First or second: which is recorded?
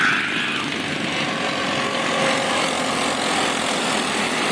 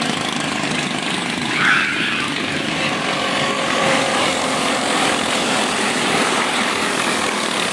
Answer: first